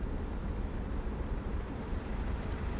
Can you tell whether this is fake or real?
fake